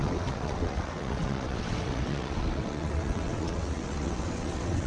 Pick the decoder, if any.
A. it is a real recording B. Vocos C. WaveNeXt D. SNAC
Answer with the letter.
C